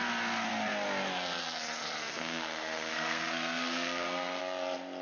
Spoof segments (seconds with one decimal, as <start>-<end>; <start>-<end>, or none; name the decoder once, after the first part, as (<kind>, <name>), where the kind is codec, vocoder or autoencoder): 2.0-4.4 (codec, SNAC)